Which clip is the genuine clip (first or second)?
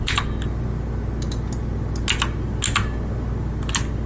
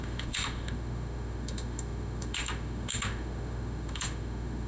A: first